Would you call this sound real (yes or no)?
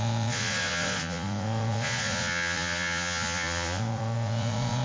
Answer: no